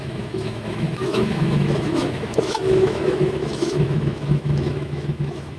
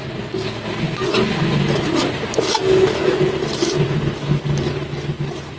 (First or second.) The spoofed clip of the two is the first